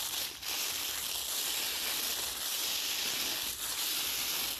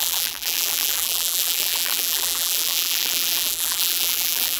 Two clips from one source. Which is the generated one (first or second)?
second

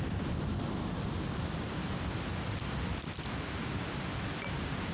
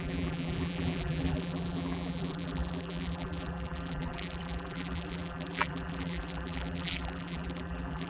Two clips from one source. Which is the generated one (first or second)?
second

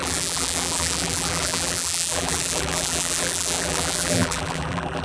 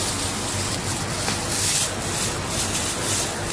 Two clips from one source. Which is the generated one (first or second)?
first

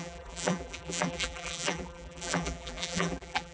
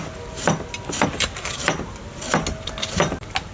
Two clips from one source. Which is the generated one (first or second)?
first